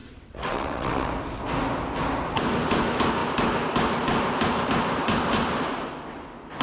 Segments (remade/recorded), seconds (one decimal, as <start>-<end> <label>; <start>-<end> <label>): 0.0-1.1 remade; 1.1-6.6 recorded